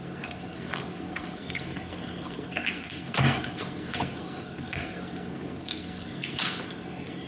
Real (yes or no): no